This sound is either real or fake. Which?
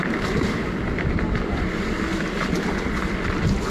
real